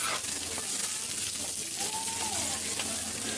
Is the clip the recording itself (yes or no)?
yes